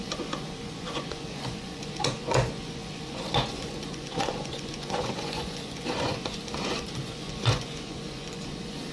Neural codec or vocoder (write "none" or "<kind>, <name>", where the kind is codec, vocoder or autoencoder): vocoder, Vocos